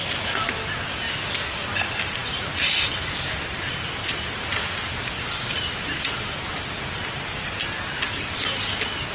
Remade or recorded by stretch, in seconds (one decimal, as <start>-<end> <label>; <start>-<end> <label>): 0.0-2.2 recorded; 2.2-3.7 remade; 3.7-9.1 recorded